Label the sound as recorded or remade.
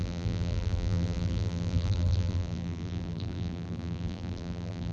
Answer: remade